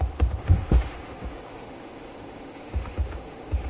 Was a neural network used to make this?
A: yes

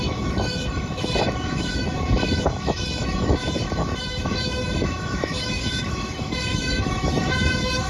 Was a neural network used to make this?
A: yes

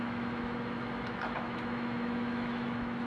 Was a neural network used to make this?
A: yes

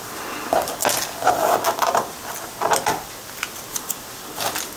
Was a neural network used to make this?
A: no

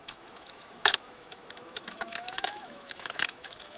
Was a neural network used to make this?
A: yes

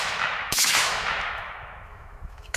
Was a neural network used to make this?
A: yes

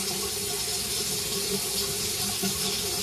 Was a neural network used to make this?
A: no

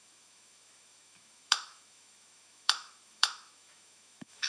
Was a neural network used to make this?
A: yes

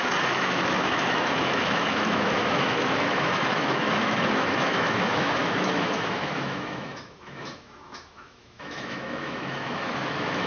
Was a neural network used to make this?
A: yes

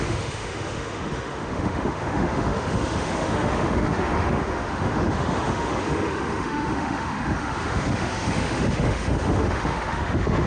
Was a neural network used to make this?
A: yes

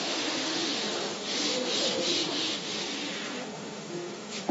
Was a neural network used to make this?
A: yes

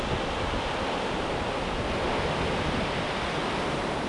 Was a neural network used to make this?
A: no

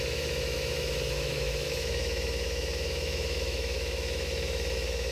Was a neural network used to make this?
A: yes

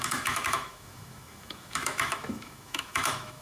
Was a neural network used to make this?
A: yes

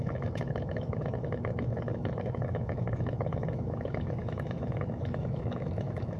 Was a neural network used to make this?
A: yes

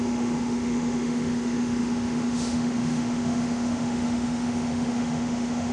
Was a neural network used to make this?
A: yes